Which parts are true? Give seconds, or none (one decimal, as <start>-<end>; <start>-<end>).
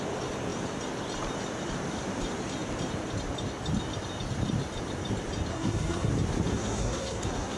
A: 0.0-5.5; 6.1-6.5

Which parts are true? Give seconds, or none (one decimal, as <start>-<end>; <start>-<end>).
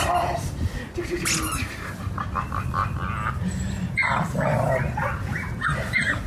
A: 0.0-6.3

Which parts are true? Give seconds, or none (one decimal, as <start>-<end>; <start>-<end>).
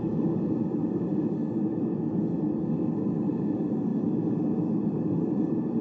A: 1.1-3.3; 3.9-4.9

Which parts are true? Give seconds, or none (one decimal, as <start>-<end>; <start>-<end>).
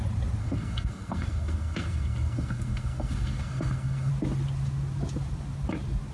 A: 0.0-0.4; 4.1-6.1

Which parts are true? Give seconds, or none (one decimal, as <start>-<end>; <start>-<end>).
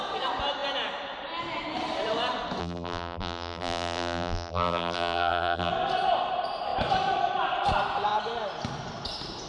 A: 0.0-2.6; 5.7-9.5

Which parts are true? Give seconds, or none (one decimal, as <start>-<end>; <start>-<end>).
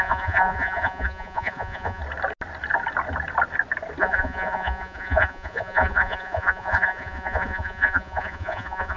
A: 2.0-4.0